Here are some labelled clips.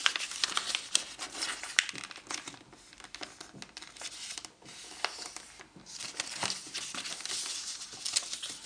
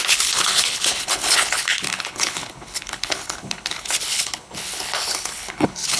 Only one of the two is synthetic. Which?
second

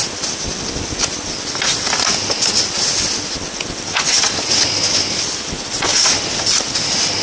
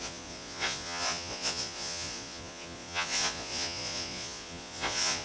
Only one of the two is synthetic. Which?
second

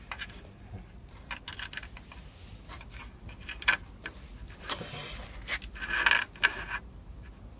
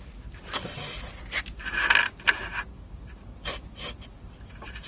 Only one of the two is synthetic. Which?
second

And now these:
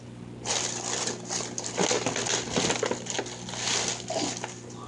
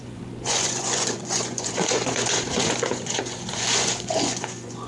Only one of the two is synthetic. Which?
second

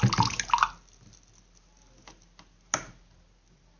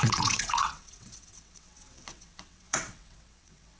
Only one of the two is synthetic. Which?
second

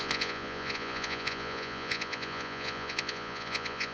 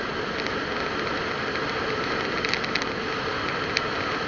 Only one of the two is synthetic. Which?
first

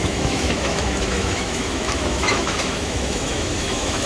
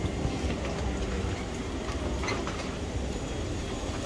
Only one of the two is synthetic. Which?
first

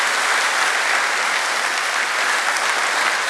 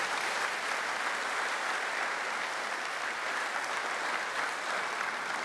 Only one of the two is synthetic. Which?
second